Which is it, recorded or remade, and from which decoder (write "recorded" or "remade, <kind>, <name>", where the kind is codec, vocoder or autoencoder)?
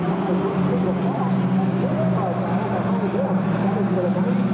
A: recorded